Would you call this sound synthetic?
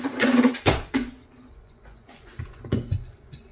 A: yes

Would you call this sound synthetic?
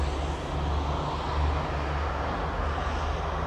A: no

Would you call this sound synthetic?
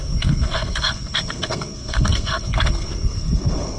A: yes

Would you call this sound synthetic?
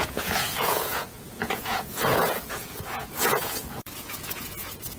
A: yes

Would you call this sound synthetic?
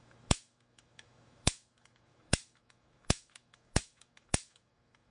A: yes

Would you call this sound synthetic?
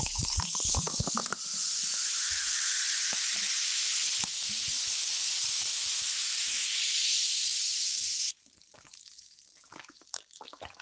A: yes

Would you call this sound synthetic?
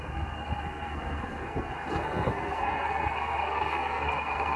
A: yes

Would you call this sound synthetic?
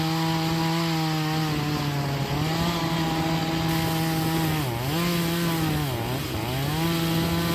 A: no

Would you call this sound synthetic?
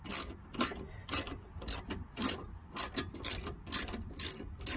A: no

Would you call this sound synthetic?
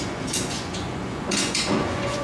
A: yes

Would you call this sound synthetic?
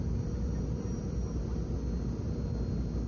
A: no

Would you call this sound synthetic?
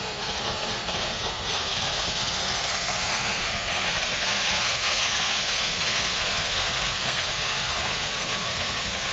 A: yes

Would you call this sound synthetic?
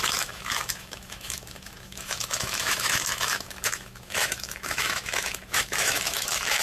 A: yes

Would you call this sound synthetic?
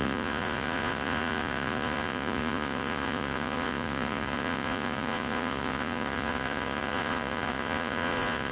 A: yes